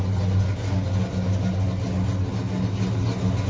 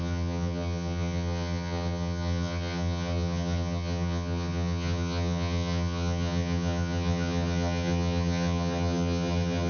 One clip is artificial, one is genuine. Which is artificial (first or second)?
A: second